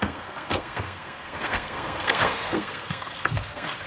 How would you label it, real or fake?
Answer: fake